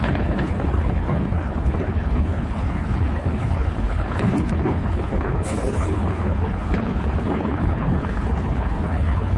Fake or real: fake